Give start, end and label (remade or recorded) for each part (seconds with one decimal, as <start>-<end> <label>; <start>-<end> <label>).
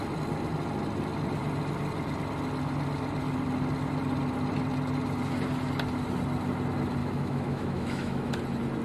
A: 0.0-7.0 recorded; 7.0-8.3 remade; 8.3-8.8 recorded